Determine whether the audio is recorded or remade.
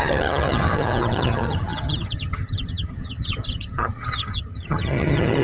remade